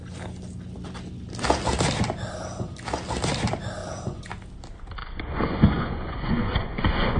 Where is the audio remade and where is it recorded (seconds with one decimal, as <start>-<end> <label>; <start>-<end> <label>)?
0.0-3.8 recorded; 3.8-4.3 remade; 4.3-5.0 recorded; 5.0-7.2 remade